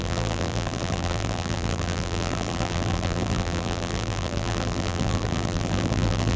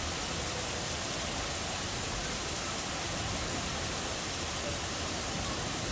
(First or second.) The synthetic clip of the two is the first